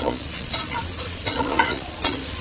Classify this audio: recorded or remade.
remade